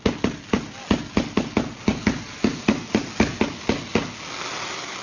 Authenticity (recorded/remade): recorded